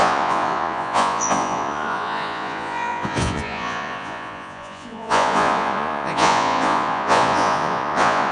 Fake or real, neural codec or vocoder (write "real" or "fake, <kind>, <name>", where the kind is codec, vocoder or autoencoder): fake, vocoder, Vocos